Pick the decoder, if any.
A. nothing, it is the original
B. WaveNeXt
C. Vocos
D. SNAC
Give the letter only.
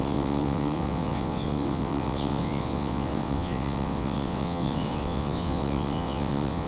B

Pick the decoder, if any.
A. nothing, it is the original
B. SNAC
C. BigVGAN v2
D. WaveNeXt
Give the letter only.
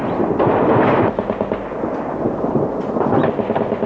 A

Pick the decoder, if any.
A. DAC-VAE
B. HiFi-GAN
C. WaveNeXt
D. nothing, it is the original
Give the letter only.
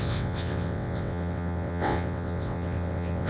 C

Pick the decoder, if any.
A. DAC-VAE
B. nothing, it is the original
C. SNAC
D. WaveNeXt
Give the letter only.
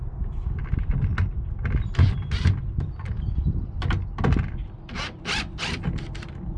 B